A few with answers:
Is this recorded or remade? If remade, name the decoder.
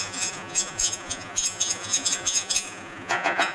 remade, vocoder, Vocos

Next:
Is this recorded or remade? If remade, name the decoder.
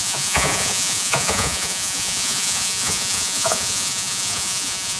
remade, vocoder, Vocos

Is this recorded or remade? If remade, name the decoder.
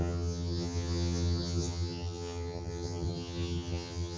remade, vocoder, HiFi-GAN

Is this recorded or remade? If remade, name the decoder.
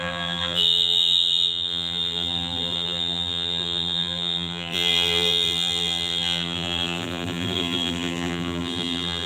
remade, vocoder, BigVGAN v2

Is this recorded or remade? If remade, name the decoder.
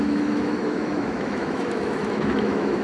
remade, autoencoder, DAC-VAE